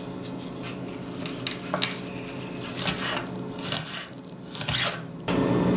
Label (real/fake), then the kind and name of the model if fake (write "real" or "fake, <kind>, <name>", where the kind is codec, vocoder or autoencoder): real